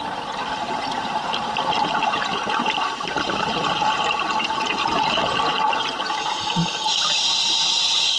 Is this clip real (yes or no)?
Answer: no